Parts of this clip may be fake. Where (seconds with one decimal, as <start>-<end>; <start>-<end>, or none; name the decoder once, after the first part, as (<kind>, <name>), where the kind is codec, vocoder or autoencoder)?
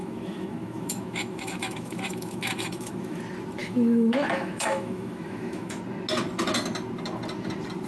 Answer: 0.0-3.2 (autoencoder, DAC-VAE); 3.6-5.8